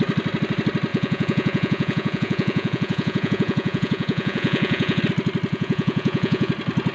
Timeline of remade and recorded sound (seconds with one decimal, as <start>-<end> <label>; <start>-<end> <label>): 0.0-0.9 recorded; 0.9-5.0 remade; 5.0-5.5 recorded; 5.5-6.5 remade; 6.5-6.9 recorded